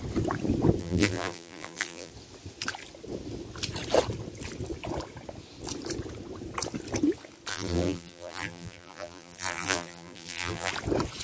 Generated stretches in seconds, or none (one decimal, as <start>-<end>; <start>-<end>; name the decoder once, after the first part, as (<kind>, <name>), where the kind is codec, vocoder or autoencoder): 0.8-2.1 (vocoder, BigVGAN v2); 7.5-10.7